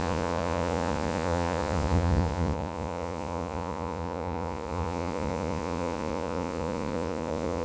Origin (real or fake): fake